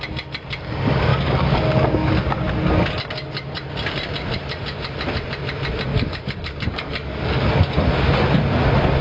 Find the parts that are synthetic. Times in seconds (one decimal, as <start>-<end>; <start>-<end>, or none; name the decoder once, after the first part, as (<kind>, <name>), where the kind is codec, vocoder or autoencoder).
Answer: 1.1-2.1 (codec, DAC); 5.9-7.5